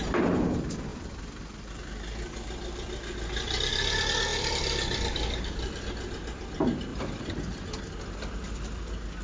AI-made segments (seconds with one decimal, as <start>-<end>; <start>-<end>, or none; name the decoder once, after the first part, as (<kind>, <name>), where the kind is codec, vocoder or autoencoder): 0.9-1.7 (vocoder, BigVGAN v2); 4.3-5.8; 6.9-7.9